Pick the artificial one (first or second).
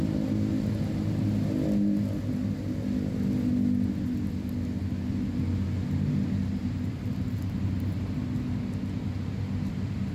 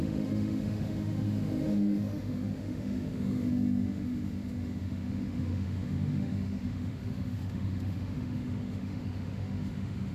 second